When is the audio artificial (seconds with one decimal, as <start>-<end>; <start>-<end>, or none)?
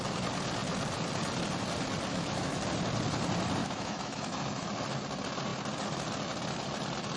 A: 2.1-2.6; 3.6-4.7